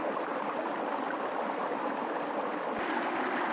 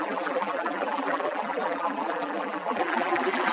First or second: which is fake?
second